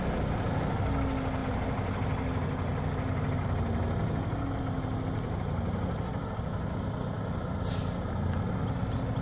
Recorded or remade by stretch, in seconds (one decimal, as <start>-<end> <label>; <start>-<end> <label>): 0.0-9.2 recorded